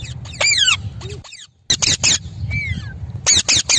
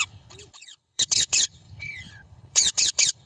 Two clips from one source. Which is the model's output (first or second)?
second